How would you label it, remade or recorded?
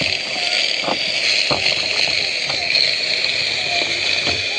recorded